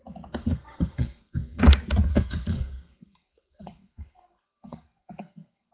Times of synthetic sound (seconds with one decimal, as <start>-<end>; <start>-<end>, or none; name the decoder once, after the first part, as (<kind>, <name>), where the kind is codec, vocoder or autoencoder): 0.4-1.6 (codec, SNAC); 2.1-5.7